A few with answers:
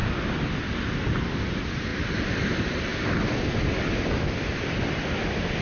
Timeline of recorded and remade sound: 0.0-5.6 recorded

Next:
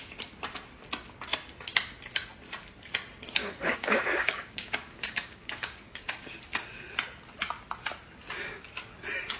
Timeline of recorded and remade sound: 0.0-3.4 recorded; 3.4-6.4 remade; 6.4-9.4 recorded

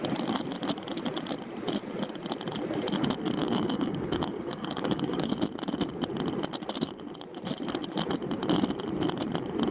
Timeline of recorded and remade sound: 0.0-3.4 recorded; 3.4-5.3 remade; 5.3-9.7 recorded

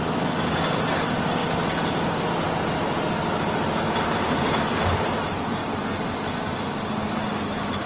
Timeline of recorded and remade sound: 0.0-7.9 recorded